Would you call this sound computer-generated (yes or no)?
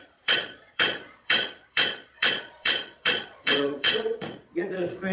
yes